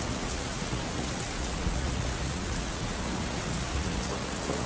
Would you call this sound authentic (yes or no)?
no